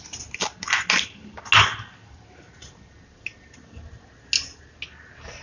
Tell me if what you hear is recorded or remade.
recorded